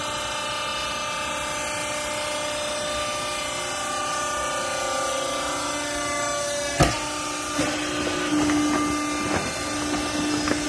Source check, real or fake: real